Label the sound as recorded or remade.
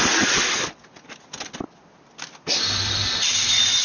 recorded